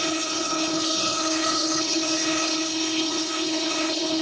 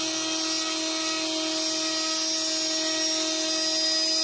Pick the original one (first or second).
second